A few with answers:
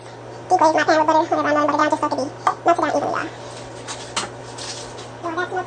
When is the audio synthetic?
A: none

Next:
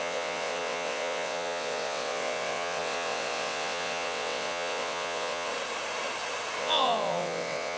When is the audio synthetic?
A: 0.0-5.5 (vocoder, WaveNeXt); 6.6-7.8

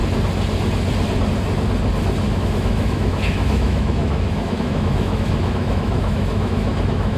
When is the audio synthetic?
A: 2.3-7.2 (autoencoder, DAC-VAE)

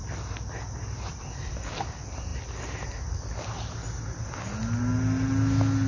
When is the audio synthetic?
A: none

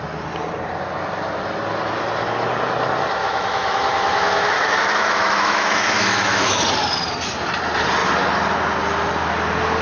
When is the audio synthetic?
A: 3.2-6.6 (autoencoder, DAC-VAE)

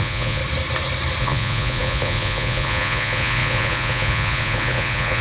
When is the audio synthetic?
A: 0.0-0.4 (vocoder, Vocos); 1.2-5.2